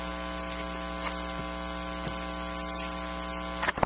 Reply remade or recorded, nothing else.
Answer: recorded